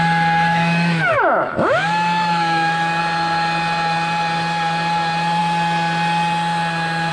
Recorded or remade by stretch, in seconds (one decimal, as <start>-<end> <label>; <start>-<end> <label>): 0.0-0.5 recorded; 0.5-3.0 remade; 3.0-7.1 recorded